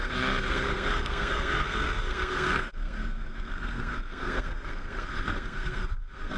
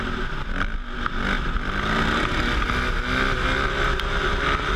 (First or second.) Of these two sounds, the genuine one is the second